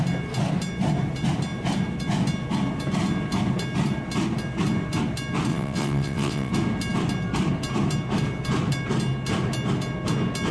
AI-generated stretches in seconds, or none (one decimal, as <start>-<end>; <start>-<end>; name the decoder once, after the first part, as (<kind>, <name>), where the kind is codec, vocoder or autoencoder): 5.5-6.5 (vocoder, WaveNeXt)